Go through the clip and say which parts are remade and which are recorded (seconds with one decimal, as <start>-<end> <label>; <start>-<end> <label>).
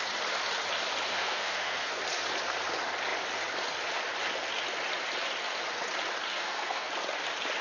0.0-1.1 recorded; 1.1-2.0 remade; 2.0-6.3 recorded; 6.3-6.9 remade; 6.9-7.6 recorded